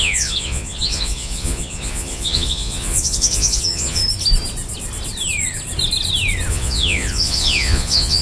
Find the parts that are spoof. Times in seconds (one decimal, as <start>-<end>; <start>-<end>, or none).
0.0-4.0; 6.5-8.2